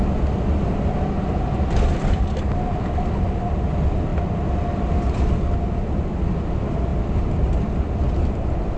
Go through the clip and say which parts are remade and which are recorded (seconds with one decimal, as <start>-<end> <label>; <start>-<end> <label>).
0.0-8.8 recorded